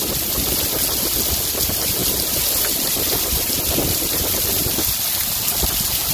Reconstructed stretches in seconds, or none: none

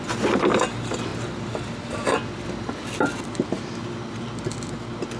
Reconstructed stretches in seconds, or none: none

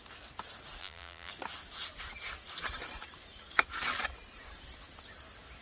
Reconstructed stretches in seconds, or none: 0.8-1.3 (vocoder, BigVGAN v2)